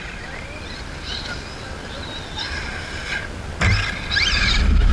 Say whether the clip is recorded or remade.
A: recorded